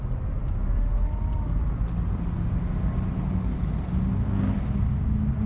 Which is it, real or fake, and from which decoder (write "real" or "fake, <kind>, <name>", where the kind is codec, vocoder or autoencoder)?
real